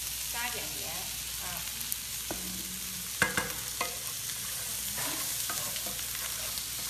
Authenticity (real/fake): real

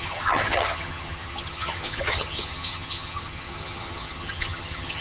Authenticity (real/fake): fake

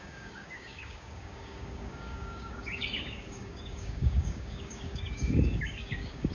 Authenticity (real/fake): fake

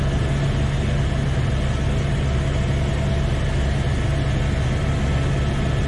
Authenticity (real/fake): real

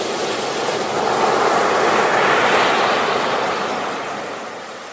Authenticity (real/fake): real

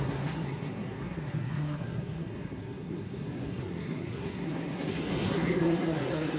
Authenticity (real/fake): fake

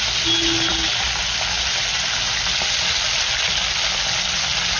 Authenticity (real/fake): real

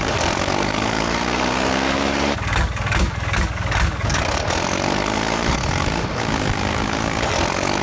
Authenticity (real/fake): fake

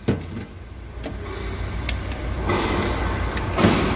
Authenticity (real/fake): real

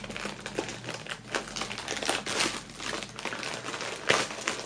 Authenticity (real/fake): real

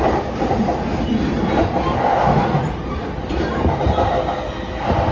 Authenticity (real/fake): real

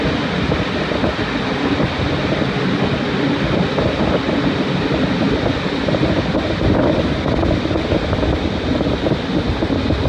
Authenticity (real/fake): real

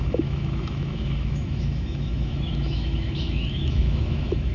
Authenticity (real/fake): fake